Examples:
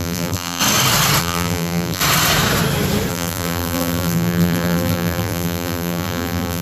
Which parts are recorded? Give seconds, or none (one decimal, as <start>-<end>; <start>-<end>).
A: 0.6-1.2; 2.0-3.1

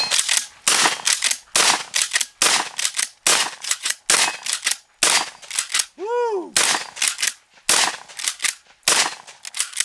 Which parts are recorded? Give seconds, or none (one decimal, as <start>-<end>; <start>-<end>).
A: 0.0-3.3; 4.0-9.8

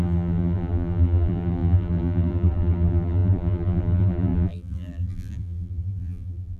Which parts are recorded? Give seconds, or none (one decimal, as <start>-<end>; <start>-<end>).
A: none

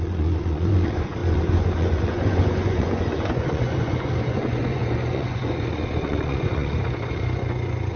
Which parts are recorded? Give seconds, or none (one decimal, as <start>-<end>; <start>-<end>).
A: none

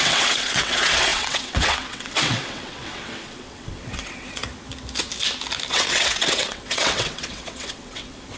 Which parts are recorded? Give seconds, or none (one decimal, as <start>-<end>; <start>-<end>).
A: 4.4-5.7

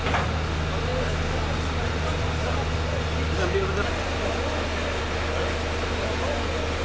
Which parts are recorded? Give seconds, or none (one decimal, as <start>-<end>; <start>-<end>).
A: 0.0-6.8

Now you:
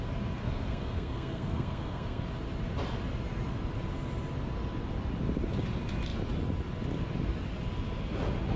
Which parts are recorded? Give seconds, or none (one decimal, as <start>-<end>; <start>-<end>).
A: 0.0-0.4; 2.2-8.6